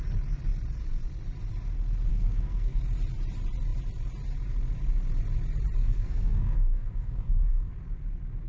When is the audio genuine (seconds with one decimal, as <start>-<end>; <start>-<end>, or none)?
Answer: 0.0-2.1; 2.8-5.8; 7.7-8.5